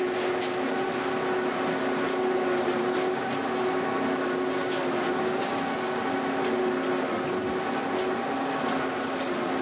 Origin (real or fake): real